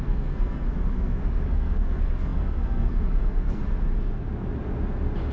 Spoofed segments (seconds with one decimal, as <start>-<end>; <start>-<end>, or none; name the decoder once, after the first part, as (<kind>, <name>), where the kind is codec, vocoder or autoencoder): 0.0-3.6 (codec, SNAC)